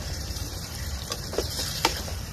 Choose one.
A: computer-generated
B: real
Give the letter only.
A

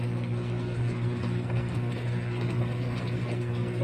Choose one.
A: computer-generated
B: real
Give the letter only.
A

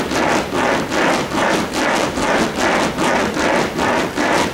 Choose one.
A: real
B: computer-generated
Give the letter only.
A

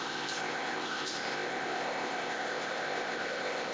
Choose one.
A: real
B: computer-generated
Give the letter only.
B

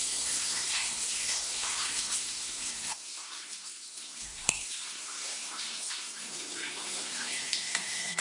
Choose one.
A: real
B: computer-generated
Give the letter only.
B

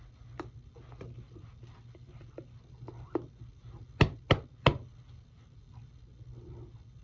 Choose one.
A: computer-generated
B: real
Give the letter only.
B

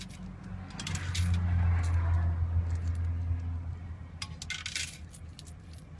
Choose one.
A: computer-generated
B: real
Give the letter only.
B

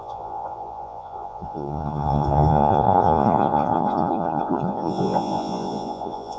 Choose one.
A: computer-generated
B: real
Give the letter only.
A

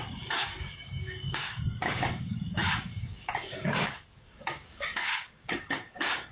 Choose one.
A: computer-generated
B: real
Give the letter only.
A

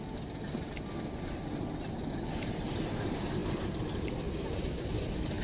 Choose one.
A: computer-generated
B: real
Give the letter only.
B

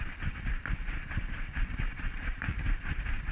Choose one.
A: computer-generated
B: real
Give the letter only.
A